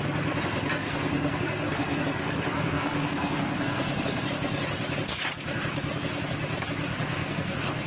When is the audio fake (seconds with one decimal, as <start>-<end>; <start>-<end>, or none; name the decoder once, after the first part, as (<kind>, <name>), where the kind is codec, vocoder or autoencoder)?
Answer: 0.8-4.2 (codec, SNAC); 6.9-7.9